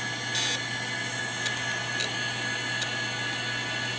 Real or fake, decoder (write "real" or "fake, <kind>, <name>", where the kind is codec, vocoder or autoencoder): real